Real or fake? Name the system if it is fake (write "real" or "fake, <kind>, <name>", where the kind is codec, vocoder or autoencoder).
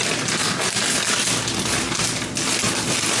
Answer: real